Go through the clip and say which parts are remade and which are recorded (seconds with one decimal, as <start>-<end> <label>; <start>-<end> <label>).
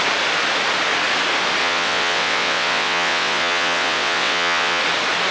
0.0-1.6 recorded; 1.6-4.8 remade; 4.8-5.3 recorded